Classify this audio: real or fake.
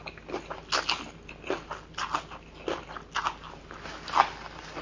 real